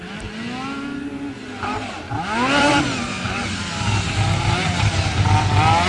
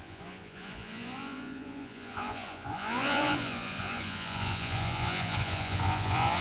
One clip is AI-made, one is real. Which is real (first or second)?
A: first